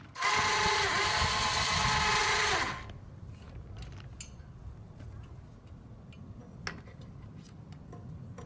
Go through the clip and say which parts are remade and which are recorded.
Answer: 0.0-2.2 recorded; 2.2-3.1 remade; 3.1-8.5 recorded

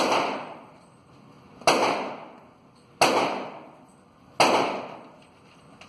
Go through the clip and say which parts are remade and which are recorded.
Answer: 0.0-1.0 remade; 1.0-4.5 recorded; 4.5-5.9 remade

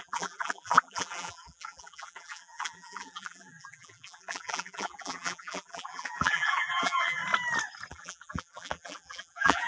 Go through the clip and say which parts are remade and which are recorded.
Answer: 0.0-7.2 remade; 7.2-7.9 recorded; 7.9-9.7 remade

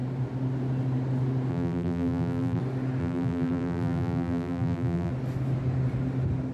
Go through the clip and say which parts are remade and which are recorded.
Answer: 0.0-1.5 recorded; 1.5-2.6 remade; 2.6-3.0 recorded; 3.0-5.1 remade; 5.1-6.5 recorded